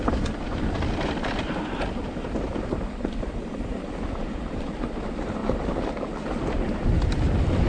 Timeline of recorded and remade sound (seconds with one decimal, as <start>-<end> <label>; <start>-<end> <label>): 0.0-7.7 recorded